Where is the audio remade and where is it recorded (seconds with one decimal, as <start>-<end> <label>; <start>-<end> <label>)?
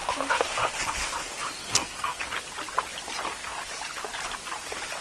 0.0-1.6 recorded; 1.6-2.2 remade; 2.2-5.0 recorded